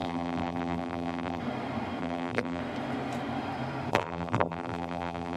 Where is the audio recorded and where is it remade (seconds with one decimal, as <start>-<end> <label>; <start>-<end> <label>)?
0.0-1.4 remade; 1.4-2.0 recorded; 2.0-2.6 remade; 2.6-3.9 recorded; 3.9-5.4 remade